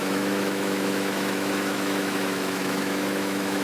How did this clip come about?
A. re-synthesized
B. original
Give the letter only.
A